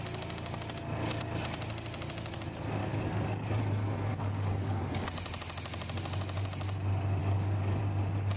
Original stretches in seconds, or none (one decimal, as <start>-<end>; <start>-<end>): 0.0-2.8; 3.6-4.1; 4.8-7.2; 7.8-8.4